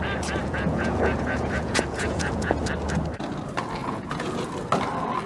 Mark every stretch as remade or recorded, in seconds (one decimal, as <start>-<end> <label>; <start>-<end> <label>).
0.0-0.4 recorded; 0.4-2.6 remade; 2.6-3.8 recorded; 3.8-4.5 remade; 4.5-5.3 recorded